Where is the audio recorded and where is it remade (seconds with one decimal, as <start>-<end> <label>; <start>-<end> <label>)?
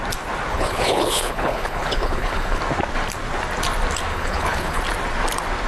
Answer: 0.0-0.5 recorded; 0.5-2.6 remade; 2.6-4.1 recorded; 4.1-4.8 remade; 4.8-5.7 recorded